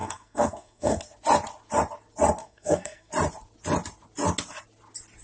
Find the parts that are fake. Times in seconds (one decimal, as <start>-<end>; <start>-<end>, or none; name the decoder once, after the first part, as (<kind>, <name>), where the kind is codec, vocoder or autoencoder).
0.0-1.0 (codec, SNAC); 2.4-3.1